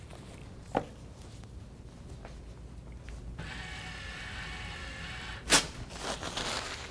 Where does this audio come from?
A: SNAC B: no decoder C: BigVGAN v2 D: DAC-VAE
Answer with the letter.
B